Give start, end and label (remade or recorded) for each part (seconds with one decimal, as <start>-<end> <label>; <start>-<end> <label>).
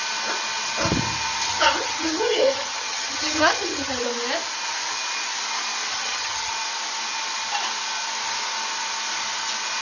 0.0-1.5 recorded; 1.5-4.0 remade; 4.0-5.9 recorded; 5.9-6.5 remade; 6.5-9.8 recorded